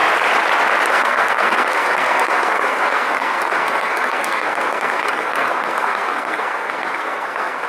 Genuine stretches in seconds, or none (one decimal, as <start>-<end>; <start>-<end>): 0.0-0.9